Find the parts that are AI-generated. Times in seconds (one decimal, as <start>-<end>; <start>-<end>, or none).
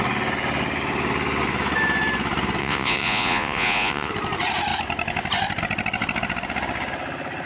2.6-4.1